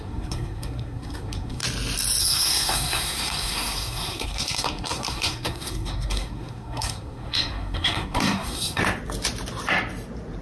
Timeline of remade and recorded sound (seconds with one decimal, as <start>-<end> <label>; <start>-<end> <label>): 0.0-1.6 remade; 1.6-2.2 recorded; 2.2-8.8 remade; 8.8-10.4 recorded